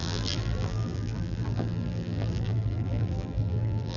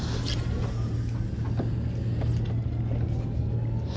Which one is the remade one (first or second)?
first